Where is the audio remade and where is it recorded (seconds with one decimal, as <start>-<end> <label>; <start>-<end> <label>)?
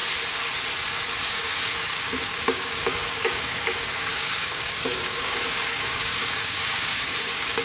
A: 0.0-1.2 recorded; 1.2-7.6 remade